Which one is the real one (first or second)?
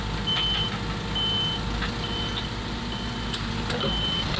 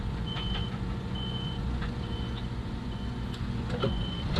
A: first